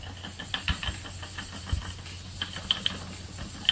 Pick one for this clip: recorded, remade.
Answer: recorded